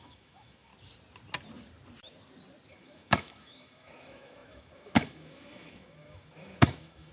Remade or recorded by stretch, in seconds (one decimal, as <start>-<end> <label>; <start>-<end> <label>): 0.0-0.7 remade; 0.7-2.7 recorded; 2.7-7.1 remade

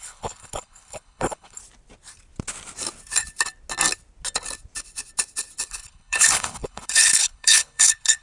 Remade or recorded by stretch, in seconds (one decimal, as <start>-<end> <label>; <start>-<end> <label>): 0.0-1.6 remade; 1.6-5.7 recorded; 5.7-8.2 remade

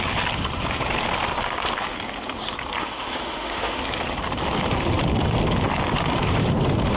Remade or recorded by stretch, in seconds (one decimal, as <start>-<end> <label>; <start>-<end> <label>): 0.0-2.8 recorded; 2.8-3.8 remade; 3.8-7.0 recorded

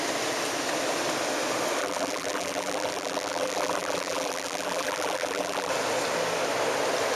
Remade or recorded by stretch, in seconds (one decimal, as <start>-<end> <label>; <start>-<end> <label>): 0.0-1.8 recorded; 1.8-5.7 remade; 5.7-7.2 recorded

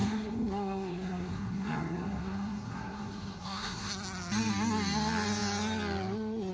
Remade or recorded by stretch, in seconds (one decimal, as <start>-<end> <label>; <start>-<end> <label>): 0.0-3.9 remade; 3.9-6.5 recorded